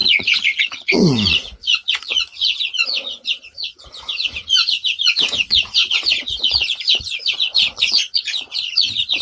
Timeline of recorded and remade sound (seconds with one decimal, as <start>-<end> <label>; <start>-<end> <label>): 0.0-9.2 remade